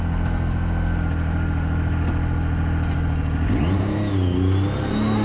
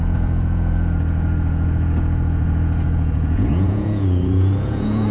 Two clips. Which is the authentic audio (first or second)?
first